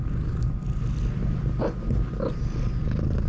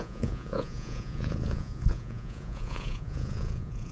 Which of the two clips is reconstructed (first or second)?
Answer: second